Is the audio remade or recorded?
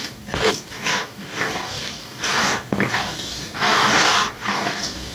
remade